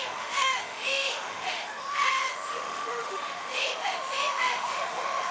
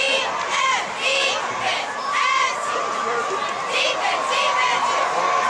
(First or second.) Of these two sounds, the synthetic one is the first